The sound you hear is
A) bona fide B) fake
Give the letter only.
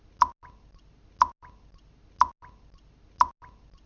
A